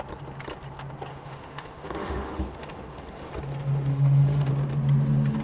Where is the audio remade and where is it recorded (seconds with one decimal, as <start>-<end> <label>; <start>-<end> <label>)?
0.0-1.1 recorded; 1.1-3.3 remade; 3.3-3.9 recorded; 3.9-4.5 remade; 4.5-5.4 recorded